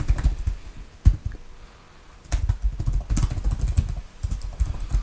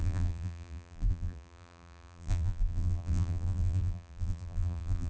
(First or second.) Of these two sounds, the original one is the first